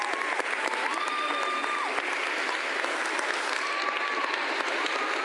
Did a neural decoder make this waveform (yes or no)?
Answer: no